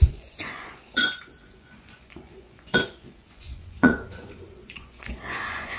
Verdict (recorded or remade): remade